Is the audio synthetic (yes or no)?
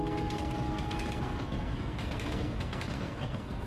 yes